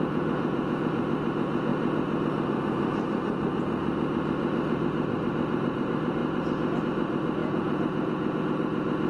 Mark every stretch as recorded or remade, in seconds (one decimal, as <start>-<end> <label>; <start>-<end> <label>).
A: 0.0-0.9 remade; 0.9-7.4 recorded; 7.4-8.4 remade; 8.4-9.1 recorded